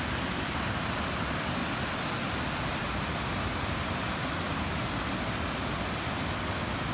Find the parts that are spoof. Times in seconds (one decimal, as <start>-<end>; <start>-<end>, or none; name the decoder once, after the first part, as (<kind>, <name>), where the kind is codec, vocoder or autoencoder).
none